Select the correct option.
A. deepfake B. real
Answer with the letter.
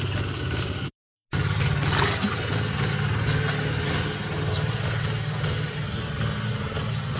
B